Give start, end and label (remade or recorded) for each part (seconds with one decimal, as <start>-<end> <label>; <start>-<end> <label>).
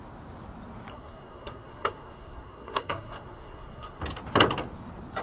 0.0-0.9 recorded; 0.9-4.0 remade; 4.0-5.2 recorded